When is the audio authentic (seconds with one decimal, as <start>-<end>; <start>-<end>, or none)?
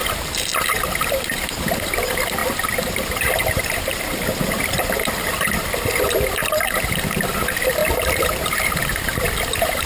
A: none